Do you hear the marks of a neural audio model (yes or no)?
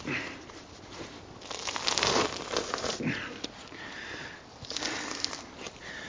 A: yes